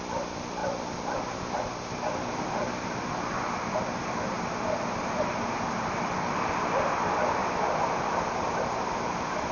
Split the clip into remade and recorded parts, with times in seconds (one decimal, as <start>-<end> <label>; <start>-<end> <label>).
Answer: 0.0-9.5 recorded